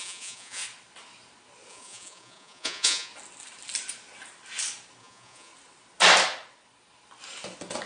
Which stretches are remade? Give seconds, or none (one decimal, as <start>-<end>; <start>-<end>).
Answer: 0.0-0.6; 1.7-3.1; 5.0-5.5